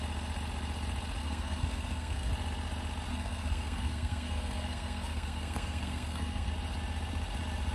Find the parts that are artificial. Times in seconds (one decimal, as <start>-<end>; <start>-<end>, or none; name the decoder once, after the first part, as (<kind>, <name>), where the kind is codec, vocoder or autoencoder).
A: 1.2-2.3 (codec, SNAC); 3.1-6.5